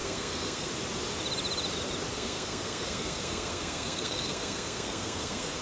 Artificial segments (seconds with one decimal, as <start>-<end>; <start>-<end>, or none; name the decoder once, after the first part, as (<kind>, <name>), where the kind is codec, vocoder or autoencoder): 0.0-0.7 (codec, SNAC); 2.1-5.6